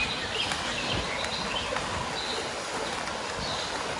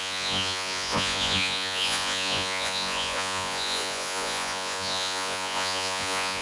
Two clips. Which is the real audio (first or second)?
first